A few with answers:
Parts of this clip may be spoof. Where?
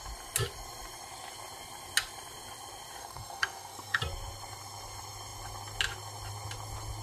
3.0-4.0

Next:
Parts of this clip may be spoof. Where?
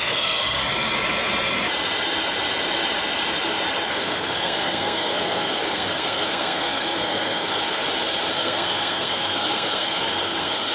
0.0-0.6; 3.9-7.8; 8.3-10.7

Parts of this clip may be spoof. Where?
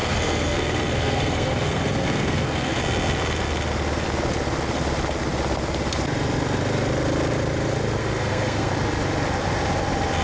0.0-2.8; 8.0-8.7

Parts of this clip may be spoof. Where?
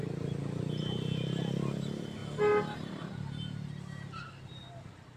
none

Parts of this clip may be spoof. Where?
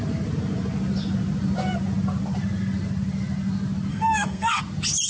3.9-4.6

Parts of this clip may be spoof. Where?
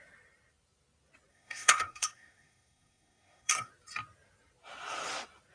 1.3-3.7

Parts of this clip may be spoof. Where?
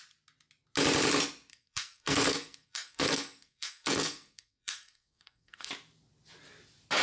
1.5-5.7